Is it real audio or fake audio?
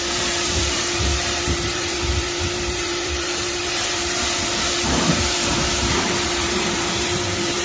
fake